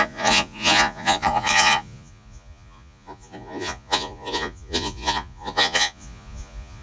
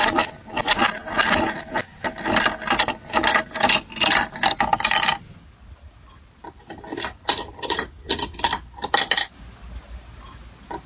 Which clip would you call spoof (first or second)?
first